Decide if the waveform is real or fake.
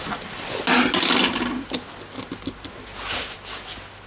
real